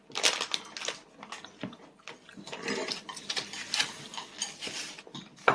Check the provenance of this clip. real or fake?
real